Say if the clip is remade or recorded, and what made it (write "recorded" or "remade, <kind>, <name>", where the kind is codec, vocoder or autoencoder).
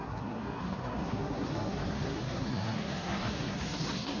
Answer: remade, codec, SNAC